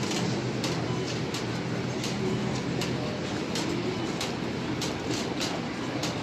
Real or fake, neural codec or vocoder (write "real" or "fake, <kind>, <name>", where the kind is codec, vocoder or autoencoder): real